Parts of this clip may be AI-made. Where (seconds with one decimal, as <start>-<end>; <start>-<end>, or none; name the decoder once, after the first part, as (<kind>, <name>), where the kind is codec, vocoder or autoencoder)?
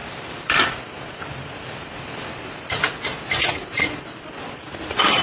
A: 0.0-2.5 (vocoder, BigVGAN v2); 3.6-4.7